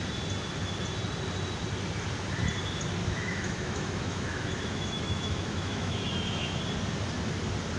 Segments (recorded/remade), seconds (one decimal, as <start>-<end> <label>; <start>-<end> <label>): 0.0-3.0 recorded; 3.0-6.6 remade; 6.6-7.8 recorded